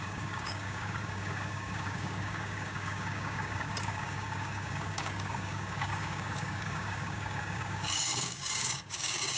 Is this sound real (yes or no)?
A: no